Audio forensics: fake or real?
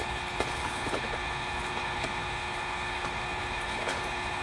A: fake